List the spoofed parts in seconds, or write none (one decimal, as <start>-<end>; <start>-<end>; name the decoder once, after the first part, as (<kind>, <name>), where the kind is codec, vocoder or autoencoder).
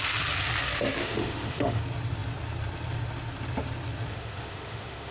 1.0-1.8 (autoencoder, DAC-VAE); 4.1-5.1